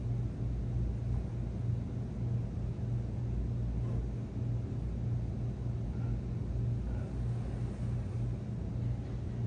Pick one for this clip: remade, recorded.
recorded